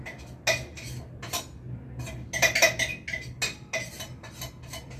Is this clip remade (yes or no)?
no